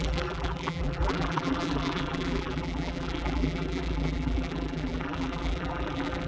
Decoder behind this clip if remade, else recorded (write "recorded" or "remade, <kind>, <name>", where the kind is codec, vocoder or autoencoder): remade, vocoder, BigVGAN v2